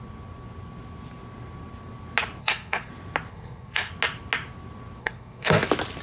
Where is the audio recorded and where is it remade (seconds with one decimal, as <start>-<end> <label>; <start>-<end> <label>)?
0.0-2.4 recorded; 2.4-2.9 remade; 2.9-3.3 recorded; 3.3-3.9 remade; 3.9-5.0 recorded; 5.0-5.6 remade; 5.6-6.0 recorded